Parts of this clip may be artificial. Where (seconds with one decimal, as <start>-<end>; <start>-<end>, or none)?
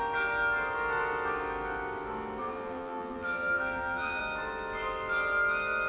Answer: 2.4-4.2